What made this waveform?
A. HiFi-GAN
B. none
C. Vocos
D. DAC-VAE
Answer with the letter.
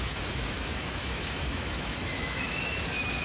D